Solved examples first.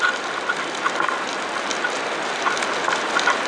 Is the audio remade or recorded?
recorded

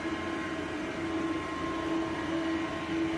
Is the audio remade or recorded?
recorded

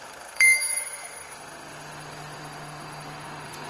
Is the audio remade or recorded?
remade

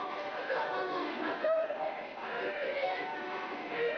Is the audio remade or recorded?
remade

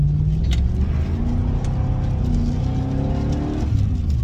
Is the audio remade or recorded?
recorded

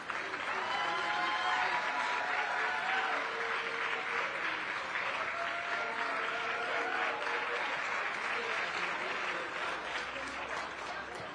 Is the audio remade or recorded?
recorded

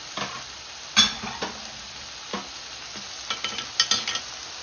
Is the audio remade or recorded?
recorded